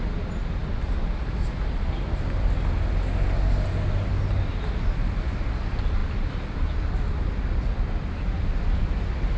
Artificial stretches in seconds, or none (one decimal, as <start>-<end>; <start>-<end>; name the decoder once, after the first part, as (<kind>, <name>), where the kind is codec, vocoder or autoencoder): none